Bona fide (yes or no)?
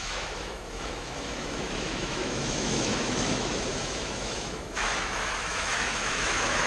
no